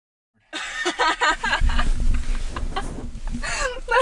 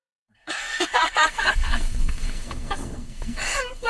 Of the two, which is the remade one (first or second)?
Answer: second